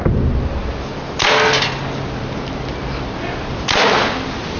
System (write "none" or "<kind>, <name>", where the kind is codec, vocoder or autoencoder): none